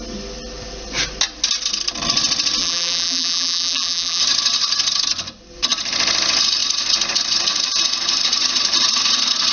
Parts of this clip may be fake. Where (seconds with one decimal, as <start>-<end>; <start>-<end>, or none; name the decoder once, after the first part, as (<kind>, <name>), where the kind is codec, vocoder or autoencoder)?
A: 2.6-4.2 (vocoder, BigVGAN v2)

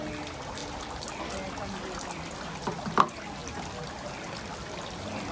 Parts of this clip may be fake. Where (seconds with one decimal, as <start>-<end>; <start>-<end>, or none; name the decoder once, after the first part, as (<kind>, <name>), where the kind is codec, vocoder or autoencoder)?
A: none

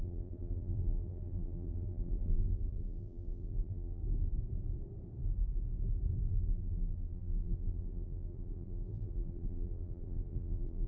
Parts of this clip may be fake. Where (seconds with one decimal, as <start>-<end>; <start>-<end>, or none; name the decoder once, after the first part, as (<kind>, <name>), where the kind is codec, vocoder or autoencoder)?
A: 0.0-4.0 (vocoder, BigVGAN v2); 6.3-10.9

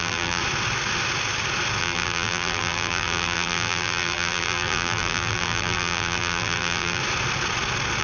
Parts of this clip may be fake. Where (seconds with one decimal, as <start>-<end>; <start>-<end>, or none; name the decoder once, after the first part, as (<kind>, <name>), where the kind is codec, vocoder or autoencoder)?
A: 0.0-0.4 (vocoder, BigVGAN v2); 1.8-7.0

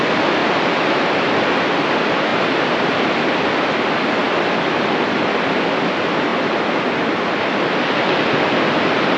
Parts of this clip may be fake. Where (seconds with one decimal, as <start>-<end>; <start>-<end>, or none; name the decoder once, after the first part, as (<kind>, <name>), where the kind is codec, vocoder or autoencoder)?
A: 0.4-1.0 (vocoder, BigVGAN v2)

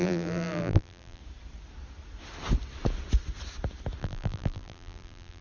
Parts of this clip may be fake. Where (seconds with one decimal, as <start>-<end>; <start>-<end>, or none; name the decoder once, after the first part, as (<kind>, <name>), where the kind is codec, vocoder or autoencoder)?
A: 0.0-1.2 (vocoder, BigVGAN v2); 4.0-5.4